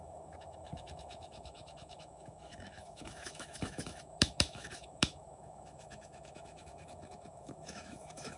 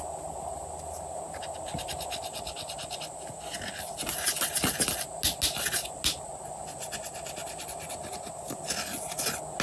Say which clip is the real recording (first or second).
second